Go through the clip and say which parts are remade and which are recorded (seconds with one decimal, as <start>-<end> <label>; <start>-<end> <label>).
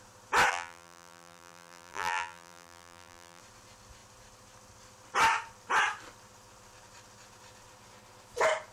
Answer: 0.0-0.5 recorded; 0.5-3.4 remade; 3.4-8.7 recorded